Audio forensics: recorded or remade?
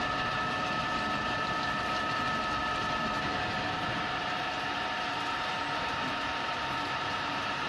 remade